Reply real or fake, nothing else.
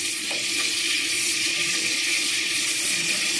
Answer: fake